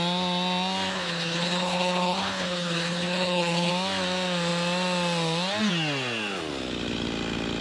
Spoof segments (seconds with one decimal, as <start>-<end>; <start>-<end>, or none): 0.9-3.7